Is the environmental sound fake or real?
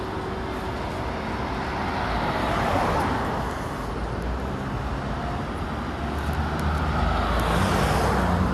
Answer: real